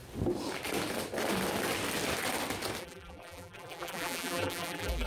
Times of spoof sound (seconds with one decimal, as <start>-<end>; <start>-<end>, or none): 2.8-5.1